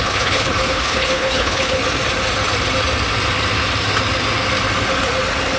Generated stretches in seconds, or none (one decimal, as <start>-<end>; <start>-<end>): 0.0-1.8